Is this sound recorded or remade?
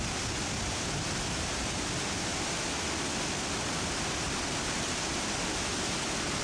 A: recorded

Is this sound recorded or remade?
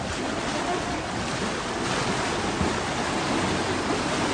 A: recorded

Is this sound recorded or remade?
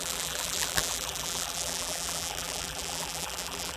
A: remade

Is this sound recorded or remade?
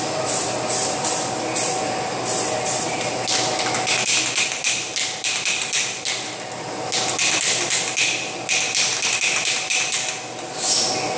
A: recorded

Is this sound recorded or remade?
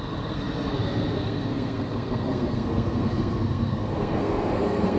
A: remade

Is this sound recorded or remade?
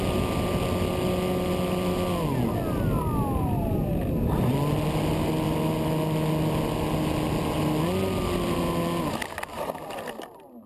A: recorded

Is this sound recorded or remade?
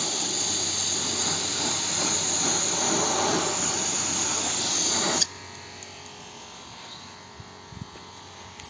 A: recorded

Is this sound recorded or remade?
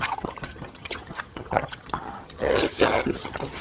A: remade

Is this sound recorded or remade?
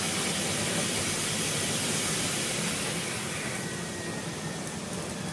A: recorded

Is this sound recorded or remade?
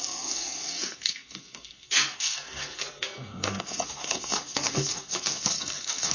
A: remade